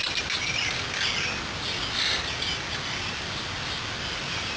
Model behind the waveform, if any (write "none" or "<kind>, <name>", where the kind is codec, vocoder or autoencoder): none